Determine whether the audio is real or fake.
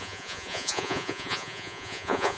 fake